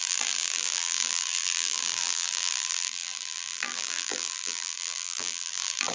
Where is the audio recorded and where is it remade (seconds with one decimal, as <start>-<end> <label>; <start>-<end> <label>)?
0.0-5.9 remade